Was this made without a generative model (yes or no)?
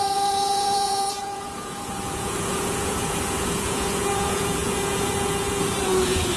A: no